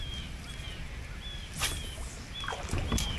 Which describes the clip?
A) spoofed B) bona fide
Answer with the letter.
B